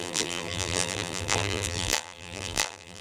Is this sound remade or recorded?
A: remade